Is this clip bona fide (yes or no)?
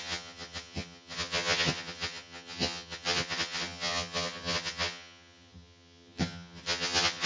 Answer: no